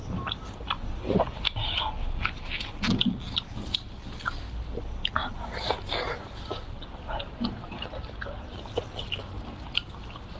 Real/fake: real